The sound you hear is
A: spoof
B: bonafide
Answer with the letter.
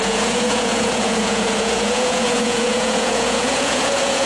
A